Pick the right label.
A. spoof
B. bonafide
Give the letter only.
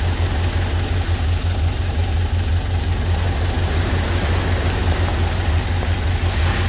B